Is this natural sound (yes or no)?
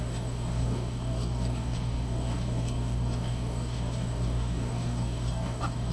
no